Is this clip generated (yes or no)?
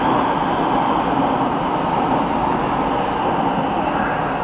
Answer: no